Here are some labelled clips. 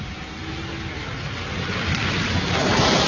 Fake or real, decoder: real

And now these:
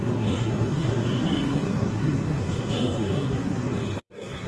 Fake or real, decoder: fake, codec, SNAC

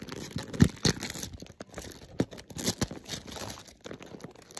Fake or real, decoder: real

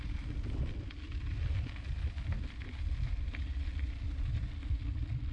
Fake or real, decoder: real